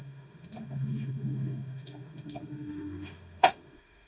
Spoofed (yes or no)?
yes